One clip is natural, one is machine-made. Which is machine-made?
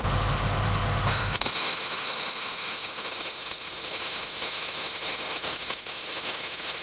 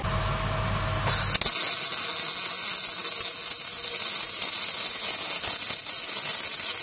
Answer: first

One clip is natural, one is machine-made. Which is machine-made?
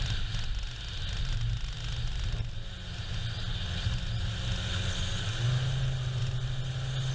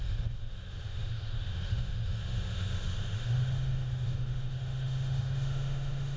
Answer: second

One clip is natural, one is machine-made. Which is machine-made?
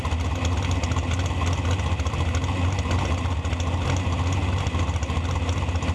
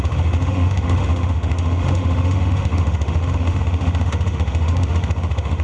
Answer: second